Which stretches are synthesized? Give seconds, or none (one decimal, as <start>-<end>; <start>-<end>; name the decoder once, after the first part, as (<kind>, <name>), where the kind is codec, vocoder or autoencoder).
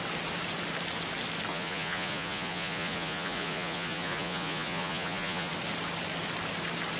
1.5-5.5 (vocoder, Vocos)